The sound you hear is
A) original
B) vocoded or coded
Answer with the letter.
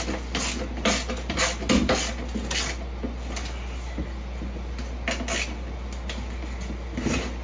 A